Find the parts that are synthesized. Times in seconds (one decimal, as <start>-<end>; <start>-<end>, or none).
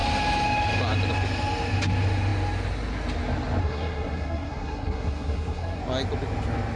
3.6-5.8